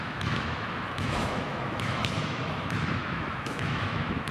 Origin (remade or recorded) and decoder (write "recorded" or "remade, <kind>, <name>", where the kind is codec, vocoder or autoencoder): remade, autoencoder, DAC-VAE